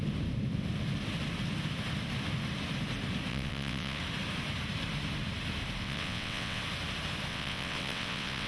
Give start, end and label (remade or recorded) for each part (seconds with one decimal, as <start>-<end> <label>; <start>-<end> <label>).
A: 0.0-3.3 recorded; 3.3-4.0 remade; 4.0-5.8 recorded; 5.8-6.6 remade; 6.6-7.3 recorded; 7.3-8.5 remade